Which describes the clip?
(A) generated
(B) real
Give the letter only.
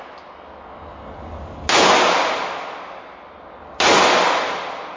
B